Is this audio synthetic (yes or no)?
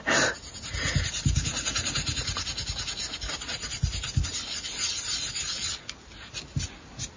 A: no